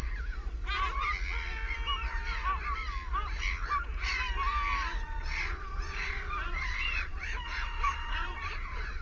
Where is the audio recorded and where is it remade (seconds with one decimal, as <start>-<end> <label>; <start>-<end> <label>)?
0.0-5.0 recorded; 5.0-9.0 remade